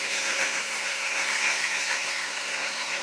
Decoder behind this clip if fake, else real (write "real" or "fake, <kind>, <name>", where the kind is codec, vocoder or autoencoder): fake, codec, SNAC